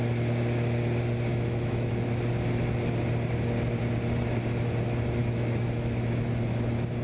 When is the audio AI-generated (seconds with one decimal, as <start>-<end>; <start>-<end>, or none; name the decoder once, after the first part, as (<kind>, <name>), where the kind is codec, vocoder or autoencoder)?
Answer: 1.3-1.9 (autoencoder, DAC-VAE); 5.2-6.1